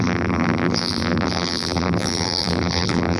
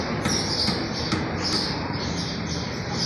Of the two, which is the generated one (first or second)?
first